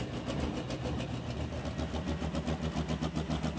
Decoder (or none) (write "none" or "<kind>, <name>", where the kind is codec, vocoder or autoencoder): none